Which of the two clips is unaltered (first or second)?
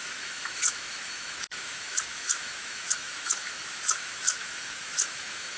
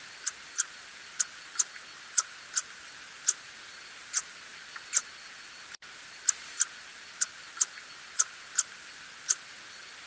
second